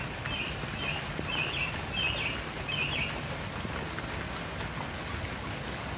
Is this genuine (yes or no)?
yes